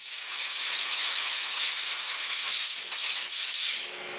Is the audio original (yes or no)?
no